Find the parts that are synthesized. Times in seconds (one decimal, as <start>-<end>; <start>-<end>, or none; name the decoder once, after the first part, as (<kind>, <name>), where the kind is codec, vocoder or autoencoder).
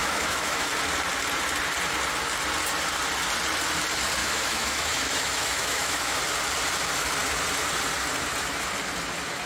0.0-0.7 (autoencoder, DAC-VAE); 4.2-6.2